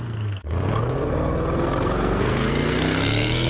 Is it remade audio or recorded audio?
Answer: remade